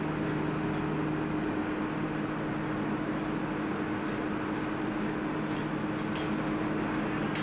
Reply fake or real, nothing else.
real